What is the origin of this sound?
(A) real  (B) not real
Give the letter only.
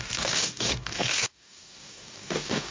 B